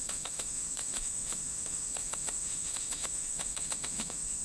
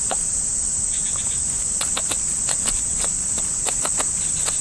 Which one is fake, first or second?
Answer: first